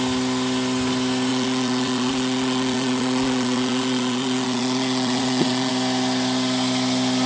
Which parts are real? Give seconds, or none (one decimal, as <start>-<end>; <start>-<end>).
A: 0.0-1.3; 5.7-7.3